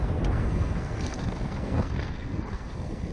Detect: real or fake fake